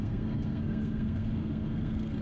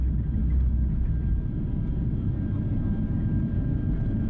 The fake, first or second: first